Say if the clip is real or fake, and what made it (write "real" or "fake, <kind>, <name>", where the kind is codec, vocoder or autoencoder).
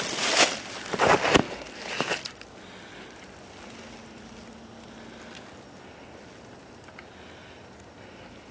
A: real